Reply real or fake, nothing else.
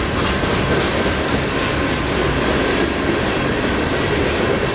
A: real